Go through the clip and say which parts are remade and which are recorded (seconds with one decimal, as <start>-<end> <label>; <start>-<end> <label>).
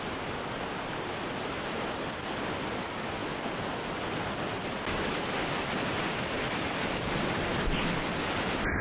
0.0-8.8 recorded